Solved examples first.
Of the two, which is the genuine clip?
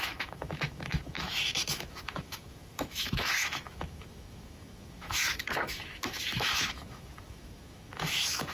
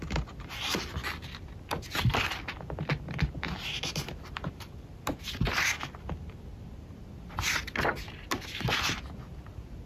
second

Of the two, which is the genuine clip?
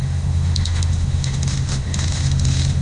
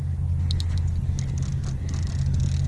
second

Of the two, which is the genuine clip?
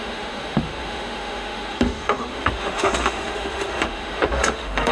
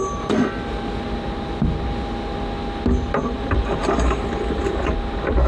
second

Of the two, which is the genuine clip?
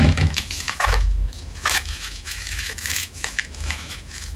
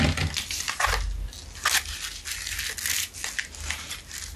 second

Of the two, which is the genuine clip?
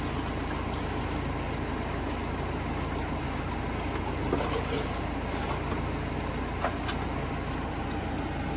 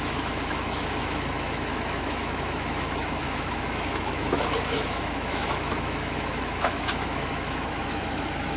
first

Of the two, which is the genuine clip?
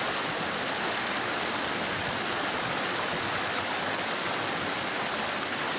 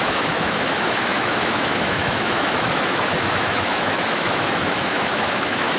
first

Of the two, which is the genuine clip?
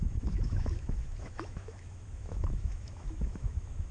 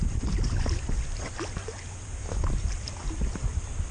second